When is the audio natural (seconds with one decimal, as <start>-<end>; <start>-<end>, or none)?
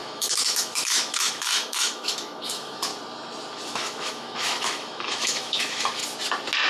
2.9-3.7; 6.0-6.7